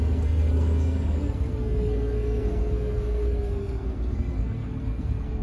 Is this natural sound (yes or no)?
no